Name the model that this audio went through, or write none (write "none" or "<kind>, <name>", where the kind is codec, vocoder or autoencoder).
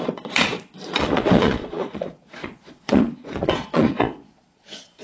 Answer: vocoder, Vocos